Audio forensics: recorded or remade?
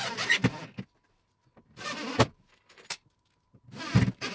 recorded